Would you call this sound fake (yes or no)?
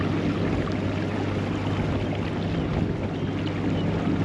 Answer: no